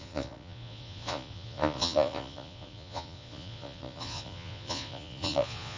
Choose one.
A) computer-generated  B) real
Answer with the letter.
A